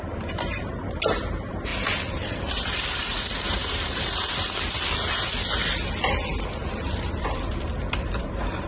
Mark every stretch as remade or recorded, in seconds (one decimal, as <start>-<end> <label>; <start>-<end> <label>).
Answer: 0.0-1.7 remade; 1.7-2.5 recorded; 2.5-4.2 remade; 4.2-6.6 recorded; 6.6-8.7 remade